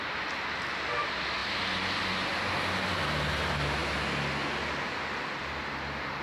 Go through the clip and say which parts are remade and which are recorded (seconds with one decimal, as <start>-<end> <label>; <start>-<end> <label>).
0.0-6.2 recorded